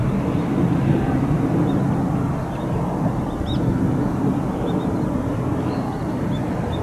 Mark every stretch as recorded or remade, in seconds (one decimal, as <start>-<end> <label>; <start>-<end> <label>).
0.0-6.8 recorded